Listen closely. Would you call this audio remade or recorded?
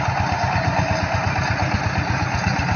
recorded